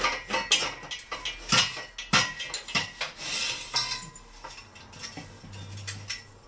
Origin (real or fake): real